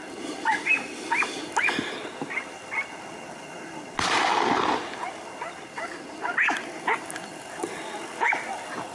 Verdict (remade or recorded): recorded